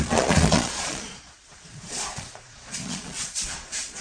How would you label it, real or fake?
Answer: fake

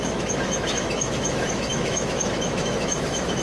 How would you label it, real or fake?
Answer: fake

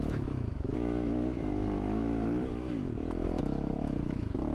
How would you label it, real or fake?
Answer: fake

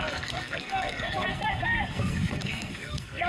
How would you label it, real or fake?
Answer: fake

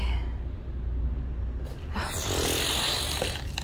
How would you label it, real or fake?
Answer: real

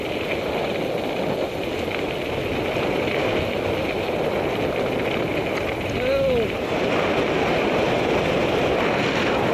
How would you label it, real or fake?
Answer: real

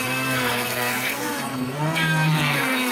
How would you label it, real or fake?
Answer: fake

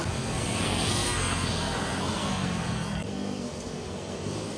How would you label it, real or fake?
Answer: fake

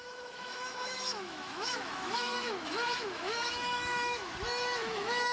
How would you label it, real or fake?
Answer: fake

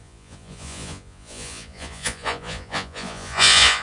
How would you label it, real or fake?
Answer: fake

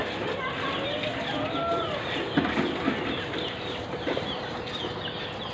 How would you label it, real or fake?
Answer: real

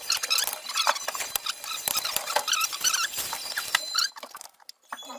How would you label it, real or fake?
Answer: real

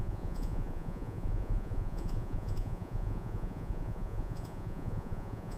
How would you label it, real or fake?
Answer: fake